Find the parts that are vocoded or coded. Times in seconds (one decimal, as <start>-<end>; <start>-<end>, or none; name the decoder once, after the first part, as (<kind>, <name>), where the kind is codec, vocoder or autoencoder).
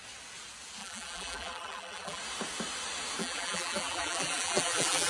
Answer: 0.8-2.2 (vocoder, BigVGAN v2); 3.2-5.1